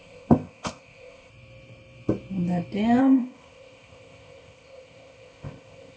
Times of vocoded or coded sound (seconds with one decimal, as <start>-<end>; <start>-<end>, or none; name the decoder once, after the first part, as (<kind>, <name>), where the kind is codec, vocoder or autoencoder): 0.0-1.3 (codec, ZipCodec); 3.0-6.0